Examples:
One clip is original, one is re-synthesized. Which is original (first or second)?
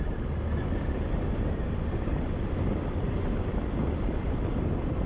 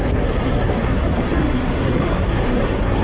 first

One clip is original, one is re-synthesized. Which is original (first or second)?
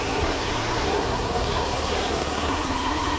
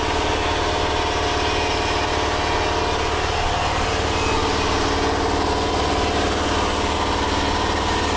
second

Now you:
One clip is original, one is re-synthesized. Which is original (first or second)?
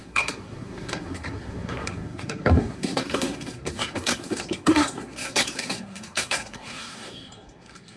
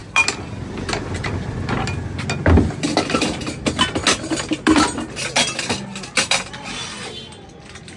second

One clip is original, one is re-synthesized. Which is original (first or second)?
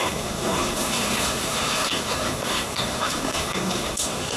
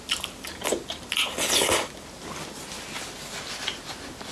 second